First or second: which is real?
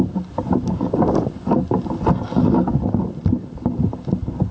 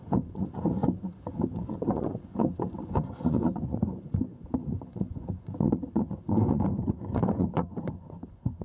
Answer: first